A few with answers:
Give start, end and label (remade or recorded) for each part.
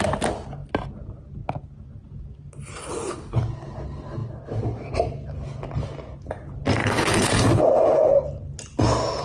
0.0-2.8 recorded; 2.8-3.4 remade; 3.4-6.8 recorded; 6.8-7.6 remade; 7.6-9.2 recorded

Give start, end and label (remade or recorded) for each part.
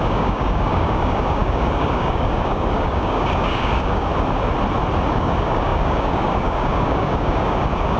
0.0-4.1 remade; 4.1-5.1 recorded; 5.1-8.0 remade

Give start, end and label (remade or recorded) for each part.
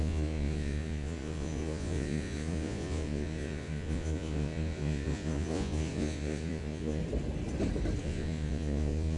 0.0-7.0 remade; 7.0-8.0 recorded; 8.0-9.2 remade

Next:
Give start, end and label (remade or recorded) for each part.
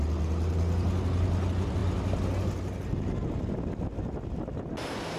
0.0-5.2 recorded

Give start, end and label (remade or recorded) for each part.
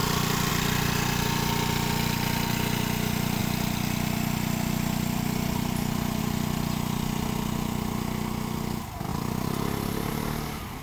0.0-10.8 recorded